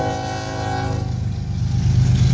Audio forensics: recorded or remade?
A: recorded